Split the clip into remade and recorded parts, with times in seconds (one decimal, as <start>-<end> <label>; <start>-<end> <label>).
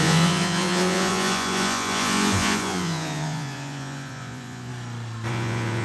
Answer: 0.0-4.7 remade; 4.7-5.3 recorded; 5.3-5.8 remade